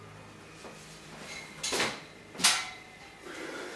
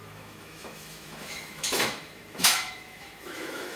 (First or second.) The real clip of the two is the first